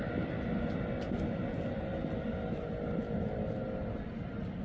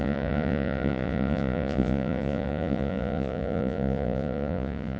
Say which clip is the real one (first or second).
first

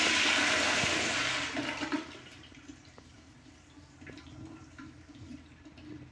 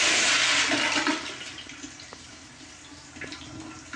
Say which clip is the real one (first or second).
second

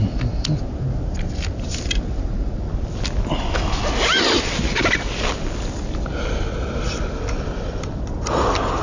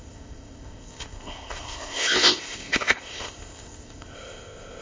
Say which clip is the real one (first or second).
first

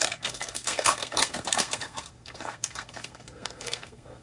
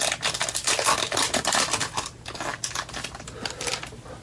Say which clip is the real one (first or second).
second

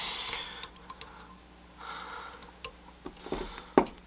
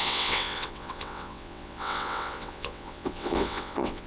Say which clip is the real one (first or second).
first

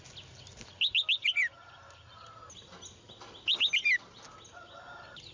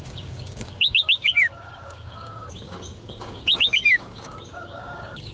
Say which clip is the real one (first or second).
first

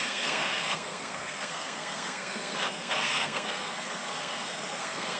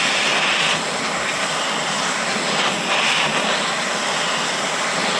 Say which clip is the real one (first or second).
second